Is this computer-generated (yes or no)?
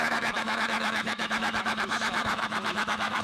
yes